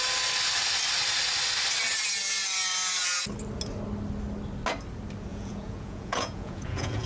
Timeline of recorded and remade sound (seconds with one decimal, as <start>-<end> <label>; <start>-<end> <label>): 0.0-5.3 recorded; 5.3-7.1 remade